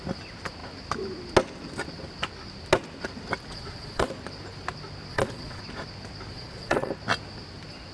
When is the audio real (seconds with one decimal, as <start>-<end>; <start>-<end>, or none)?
0.0-3.5; 4.1-5.1; 5.6-6.3; 6.9-7.9